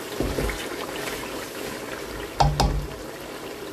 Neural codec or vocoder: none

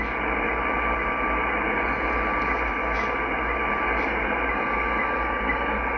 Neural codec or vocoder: none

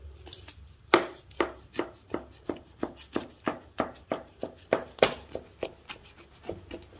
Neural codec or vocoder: none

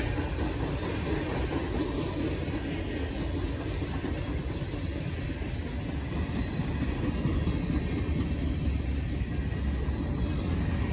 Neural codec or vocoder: none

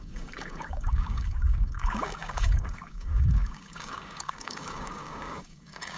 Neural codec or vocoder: codec, DAC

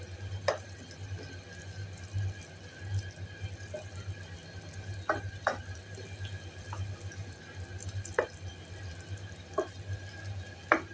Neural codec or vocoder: none